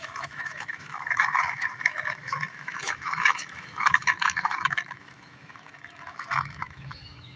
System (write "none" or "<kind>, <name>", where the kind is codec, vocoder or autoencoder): autoencoder, DAC-VAE